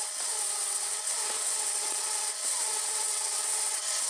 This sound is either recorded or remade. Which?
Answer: remade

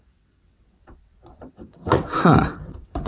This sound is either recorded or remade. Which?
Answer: remade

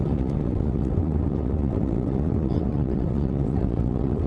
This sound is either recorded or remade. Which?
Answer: remade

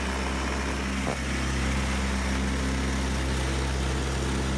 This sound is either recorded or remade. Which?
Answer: recorded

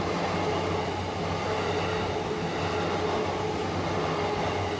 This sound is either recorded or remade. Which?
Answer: recorded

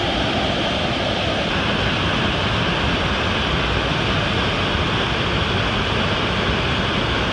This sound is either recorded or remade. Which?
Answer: recorded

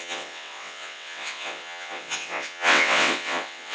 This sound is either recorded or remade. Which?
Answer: remade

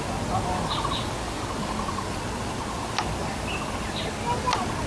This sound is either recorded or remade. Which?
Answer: recorded